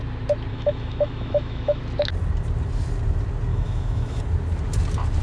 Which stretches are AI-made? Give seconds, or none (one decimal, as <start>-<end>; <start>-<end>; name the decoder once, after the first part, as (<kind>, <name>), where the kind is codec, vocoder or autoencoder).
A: 0.5-1.8 (autoencoder, DAC-VAE); 3.5-4.2